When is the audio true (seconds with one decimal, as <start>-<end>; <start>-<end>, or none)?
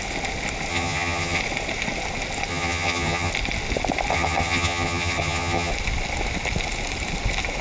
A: 0.0-0.7; 1.4-2.5; 3.3-4.1; 5.7-7.6